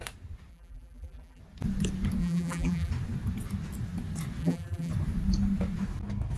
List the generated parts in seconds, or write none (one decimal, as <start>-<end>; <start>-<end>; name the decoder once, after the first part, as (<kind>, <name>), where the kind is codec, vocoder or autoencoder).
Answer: 0.5-1.4 (vocoder, BigVGAN v2); 2.2-2.9; 4.4-4.9